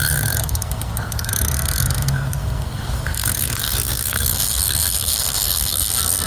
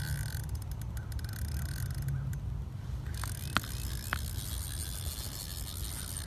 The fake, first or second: first